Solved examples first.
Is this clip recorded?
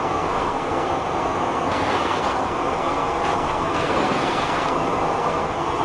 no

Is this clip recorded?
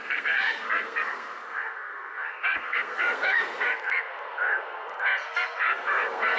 no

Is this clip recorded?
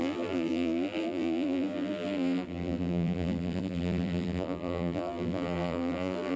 no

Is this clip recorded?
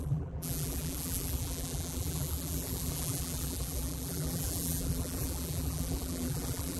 no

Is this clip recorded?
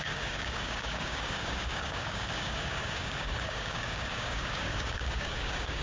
no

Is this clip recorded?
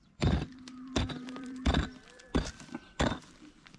no